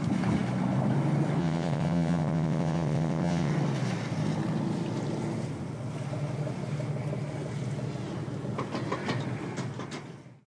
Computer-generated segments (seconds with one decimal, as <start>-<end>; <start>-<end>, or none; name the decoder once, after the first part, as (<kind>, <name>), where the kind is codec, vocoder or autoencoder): 1.4-3.5 (vocoder, WaveNeXt)